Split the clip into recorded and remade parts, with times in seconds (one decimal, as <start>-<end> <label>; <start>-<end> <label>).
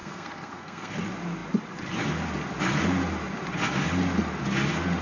0.0-0.9 remade; 0.9-5.0 recorded